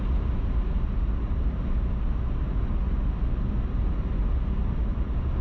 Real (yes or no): yes